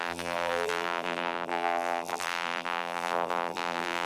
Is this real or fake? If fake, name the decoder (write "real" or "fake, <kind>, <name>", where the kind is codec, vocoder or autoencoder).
fake, vocoder, BigVGAN v2